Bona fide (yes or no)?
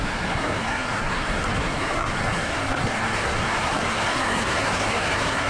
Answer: no